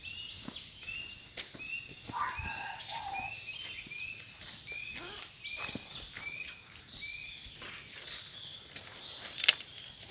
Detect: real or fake real